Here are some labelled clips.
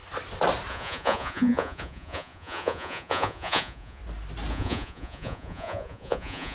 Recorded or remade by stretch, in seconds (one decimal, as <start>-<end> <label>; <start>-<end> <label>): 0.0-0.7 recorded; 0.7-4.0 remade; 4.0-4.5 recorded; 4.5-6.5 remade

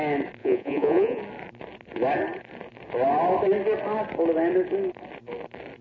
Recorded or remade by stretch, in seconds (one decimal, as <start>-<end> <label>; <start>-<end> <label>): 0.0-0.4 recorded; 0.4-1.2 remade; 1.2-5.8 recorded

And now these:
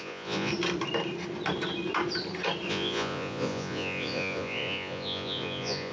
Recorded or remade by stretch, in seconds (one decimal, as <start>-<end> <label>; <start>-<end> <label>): 0.0-0.5 remade; 0.5-2.7 recorded; 2.7-5.9 remade

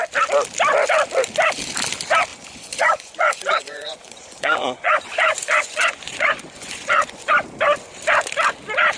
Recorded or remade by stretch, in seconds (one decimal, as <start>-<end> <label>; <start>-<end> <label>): 0.0-2.3 recorded; 2.3-7.3 remade; 7.3-9.0 recorded

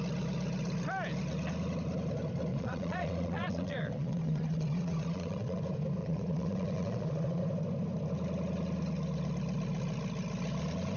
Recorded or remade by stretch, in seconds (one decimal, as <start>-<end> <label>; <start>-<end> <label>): 0.0-2.5 recorded; 2.5-5.6 remade; 5.6-6.0 recorded; 6.0-7.4 remade; 7.4-11.0 recorded